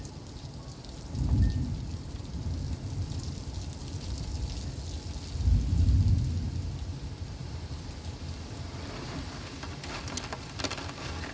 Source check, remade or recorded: recorded